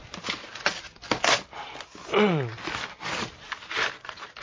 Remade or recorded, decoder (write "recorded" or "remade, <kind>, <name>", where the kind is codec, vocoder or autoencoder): recorded